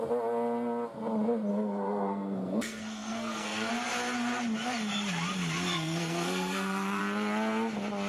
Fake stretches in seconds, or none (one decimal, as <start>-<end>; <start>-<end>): 1.5-3.7; 5.7-7.0